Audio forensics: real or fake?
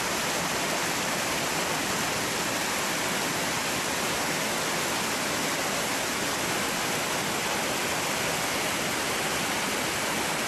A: real